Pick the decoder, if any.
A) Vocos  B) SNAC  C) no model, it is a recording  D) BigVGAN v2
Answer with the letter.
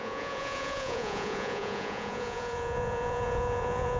A